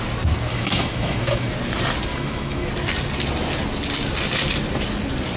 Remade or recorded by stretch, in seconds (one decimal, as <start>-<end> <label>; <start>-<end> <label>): 0.0-0.5 recorded; 0.5-1.5 remade; 1.5-2.1 recorded; 2.1-2.7 remade; 2.7-5.4 recorded